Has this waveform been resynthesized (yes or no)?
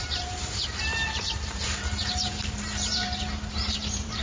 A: yes